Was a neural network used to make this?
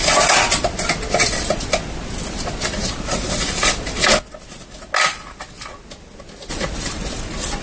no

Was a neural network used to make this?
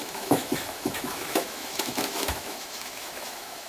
yes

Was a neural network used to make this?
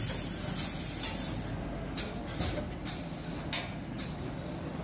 no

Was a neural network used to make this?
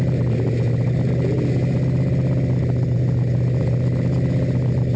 no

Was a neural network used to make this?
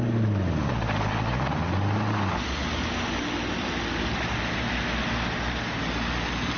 no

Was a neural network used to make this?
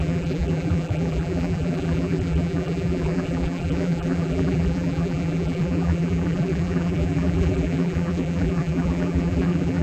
yes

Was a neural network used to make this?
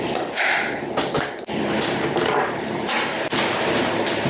yes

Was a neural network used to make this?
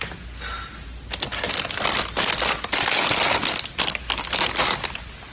no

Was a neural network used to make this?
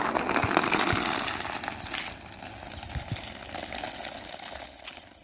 no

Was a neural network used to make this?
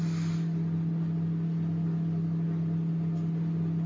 no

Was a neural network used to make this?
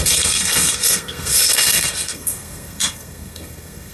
yes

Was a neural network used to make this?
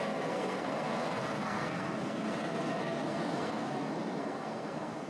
yes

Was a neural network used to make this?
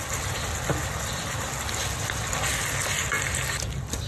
no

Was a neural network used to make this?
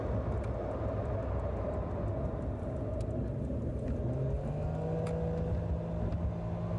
no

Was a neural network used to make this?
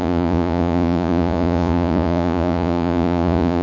yes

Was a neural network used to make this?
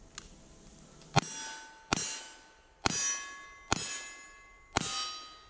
no